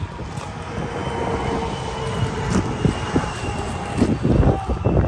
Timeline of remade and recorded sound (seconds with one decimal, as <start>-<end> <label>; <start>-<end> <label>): 0.0-5.1 recorded